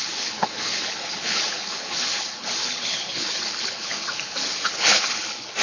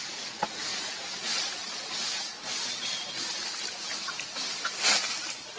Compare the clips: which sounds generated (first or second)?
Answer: first